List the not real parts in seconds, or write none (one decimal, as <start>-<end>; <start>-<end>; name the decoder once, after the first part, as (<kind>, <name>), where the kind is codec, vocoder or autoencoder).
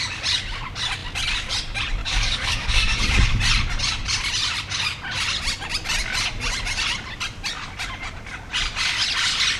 2.0-3.4 (codec, DAC)